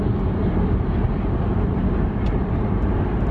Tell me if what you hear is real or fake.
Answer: real